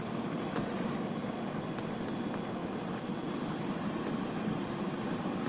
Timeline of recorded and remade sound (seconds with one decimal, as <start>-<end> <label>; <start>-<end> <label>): 0.0-1.2 remade; 1.2-2.1 recorded; 2.1-5.5 remade